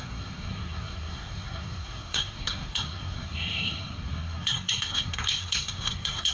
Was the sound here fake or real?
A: fake